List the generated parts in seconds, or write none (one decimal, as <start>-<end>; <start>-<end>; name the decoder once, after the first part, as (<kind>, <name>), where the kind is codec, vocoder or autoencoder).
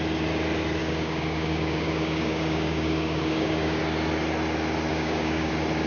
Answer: 0.8-3.8 (codec, DAC); 4.9-5.5